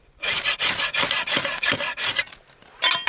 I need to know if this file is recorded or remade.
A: recorded